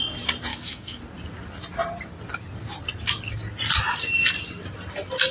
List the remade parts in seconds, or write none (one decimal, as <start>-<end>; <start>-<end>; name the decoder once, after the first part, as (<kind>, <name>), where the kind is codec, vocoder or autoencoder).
0.5-1.0 (autoencoder, DAC-VAE)